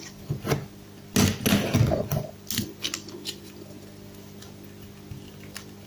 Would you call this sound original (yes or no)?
yes